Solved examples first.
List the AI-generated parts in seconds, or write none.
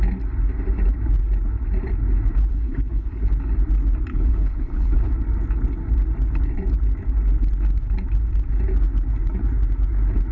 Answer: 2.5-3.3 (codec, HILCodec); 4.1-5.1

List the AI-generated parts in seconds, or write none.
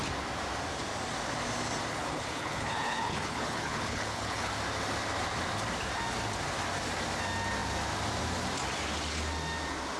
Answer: 1.9-4.5 (codec, HILCodec)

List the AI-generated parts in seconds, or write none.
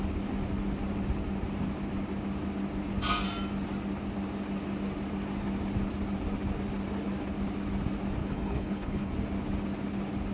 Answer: 8.2-9.1 (codec, HILCodec)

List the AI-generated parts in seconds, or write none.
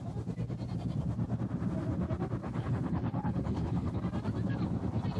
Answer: 2.4-4.0 (codec, HILCodec)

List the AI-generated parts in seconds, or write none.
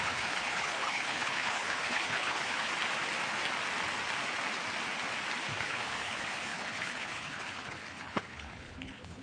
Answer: 0.0-2.7 (codec, HILCodec); 5.6-9.2